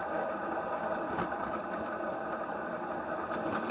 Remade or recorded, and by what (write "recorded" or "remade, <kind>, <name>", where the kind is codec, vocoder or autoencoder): recorded